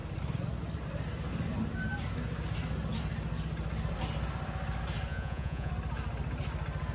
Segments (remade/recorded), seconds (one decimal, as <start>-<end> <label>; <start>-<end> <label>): 0.0-5.1 recorded; 5.1-5.7 remade; 5.7-6.9 recorded